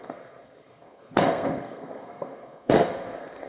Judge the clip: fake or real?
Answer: fake